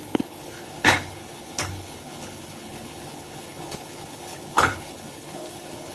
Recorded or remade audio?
remade